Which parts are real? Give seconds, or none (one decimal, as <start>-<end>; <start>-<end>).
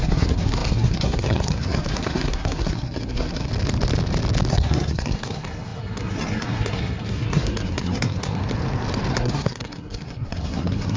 3.5-4.5; 8.4-9.1